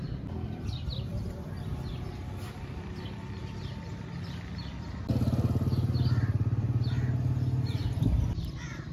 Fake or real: real